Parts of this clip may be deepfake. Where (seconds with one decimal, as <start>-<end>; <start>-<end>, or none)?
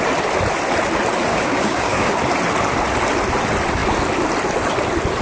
1.3-2.1